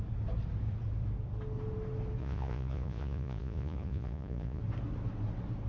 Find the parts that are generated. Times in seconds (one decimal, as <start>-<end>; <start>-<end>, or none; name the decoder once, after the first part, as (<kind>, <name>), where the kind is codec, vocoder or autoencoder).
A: 2.2-4.6 (vocoder, Vocos)